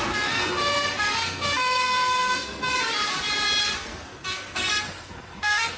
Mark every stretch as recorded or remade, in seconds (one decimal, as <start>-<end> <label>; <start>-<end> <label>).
0.0-2.7 remade; 2.7-3.6 recorded; 3.6-5.8 remade